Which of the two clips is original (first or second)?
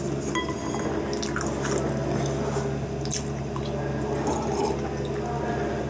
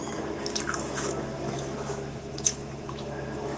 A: first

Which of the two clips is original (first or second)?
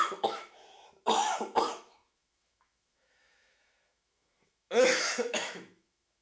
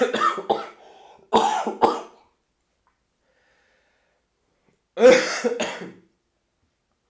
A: second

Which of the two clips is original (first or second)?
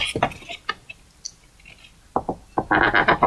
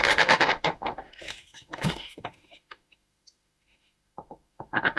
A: first